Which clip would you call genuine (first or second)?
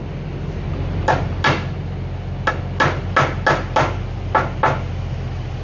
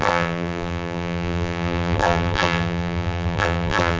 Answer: first